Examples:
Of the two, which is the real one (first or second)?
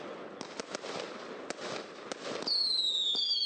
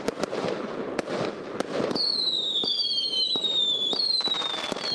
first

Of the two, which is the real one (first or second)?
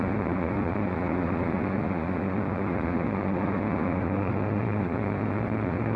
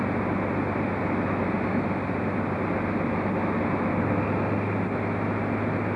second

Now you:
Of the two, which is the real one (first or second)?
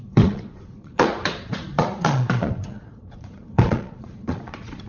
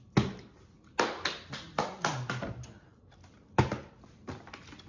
second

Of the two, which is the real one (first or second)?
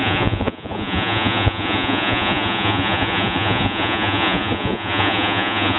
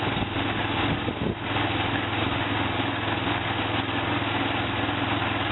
second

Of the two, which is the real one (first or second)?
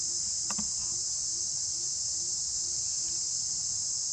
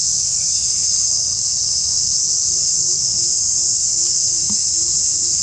first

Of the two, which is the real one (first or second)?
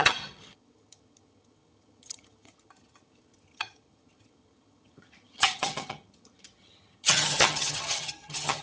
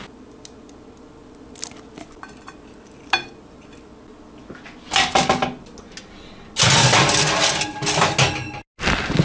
second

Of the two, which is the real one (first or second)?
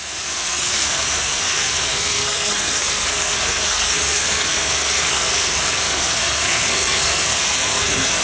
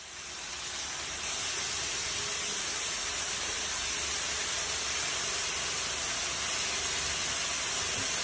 second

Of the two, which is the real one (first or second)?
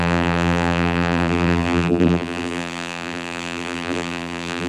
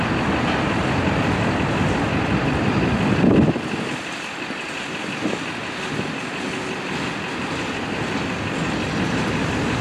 second